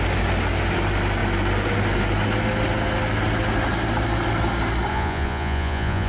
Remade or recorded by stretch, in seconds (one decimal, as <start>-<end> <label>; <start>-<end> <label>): 0.0-4.9 recorded; 4.9-6.1 remade